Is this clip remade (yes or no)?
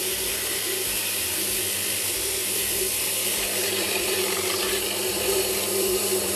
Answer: yes